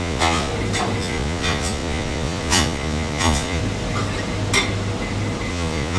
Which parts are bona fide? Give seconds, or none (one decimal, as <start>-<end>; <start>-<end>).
0.5-1.0; 3.6-5.5